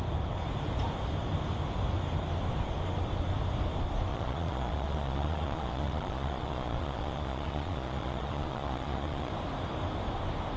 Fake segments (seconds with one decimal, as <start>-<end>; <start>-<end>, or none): 4.1-9.3